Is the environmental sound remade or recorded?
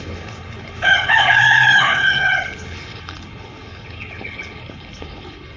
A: remade